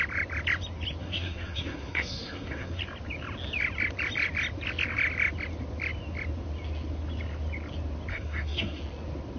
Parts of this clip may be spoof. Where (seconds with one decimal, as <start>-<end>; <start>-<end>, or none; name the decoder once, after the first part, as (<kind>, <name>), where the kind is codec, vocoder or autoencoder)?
1.0-2.8 (codec, SNAC); 8.1-8.8